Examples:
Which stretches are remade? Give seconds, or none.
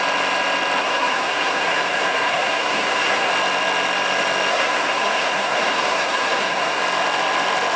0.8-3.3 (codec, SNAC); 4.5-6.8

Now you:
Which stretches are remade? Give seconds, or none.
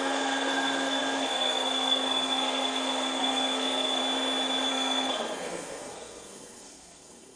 0.0-4.0 (codec, SNAC); 4.7-7.4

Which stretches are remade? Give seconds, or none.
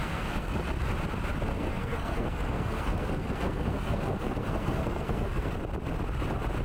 0.0-0.8 (codec, SNAC); 1.5-5.5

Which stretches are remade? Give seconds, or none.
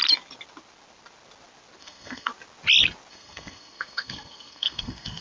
1.8-2.3 (codec, SNAC); 3.1-5.2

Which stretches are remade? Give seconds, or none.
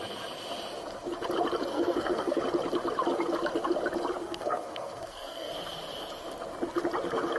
1.7-2.4 (codec, SNAC); 4.2-5.5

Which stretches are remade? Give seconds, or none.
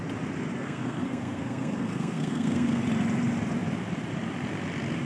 0.6-2.8 (codec, SNAC)